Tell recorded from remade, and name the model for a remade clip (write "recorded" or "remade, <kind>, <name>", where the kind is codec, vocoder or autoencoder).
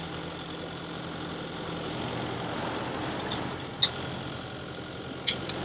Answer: recorded